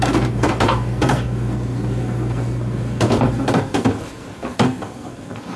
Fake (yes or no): yes